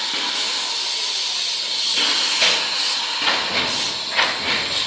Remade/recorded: recorded